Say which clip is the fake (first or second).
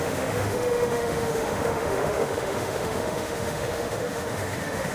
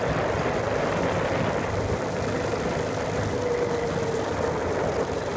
first